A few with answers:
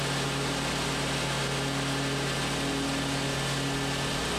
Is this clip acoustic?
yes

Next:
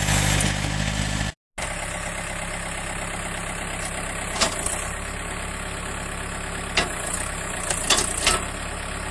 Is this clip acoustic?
yes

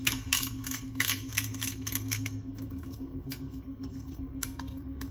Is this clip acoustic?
no